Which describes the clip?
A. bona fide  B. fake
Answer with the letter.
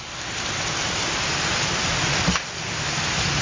A